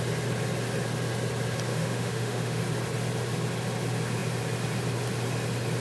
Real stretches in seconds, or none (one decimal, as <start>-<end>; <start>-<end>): 0.0-1.7; 2.6-5.8

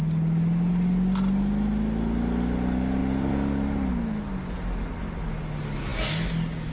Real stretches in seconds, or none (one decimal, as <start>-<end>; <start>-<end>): 0.0-3.0; 3.9-6.7

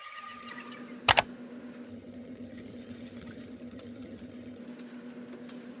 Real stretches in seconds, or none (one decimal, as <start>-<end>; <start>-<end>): 0.5-1.9; 4.6-5.8

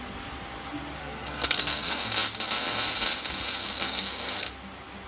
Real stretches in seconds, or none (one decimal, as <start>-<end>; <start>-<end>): 0.0-1.0; 2.0-3.6; 4.5-5.1